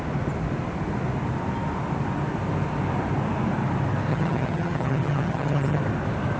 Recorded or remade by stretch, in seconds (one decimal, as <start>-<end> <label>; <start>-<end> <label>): 0.0-4.1 recorded; 4.1-5.8 remade; 5.8-6.4 recorded